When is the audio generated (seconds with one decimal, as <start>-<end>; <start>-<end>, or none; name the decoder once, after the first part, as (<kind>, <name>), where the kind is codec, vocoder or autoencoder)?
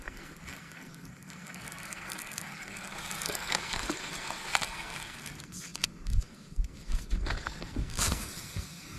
0.0-9.0 (codec, SNAC)